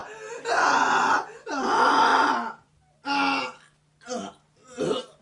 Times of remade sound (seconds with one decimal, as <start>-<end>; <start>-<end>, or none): 0.5-2.1